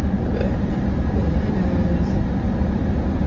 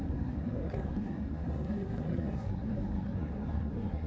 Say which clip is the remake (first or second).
second